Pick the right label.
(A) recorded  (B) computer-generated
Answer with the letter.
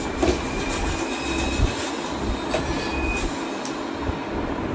A